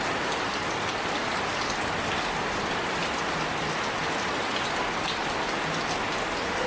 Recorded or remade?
recorded